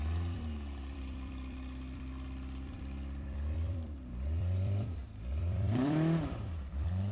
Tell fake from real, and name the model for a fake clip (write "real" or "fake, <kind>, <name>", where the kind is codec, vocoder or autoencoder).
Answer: fake, vocoder, BigVGAN v2